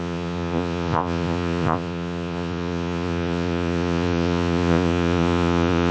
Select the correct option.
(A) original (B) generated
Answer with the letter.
B